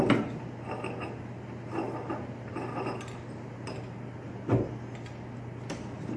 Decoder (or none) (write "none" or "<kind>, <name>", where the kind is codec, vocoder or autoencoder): none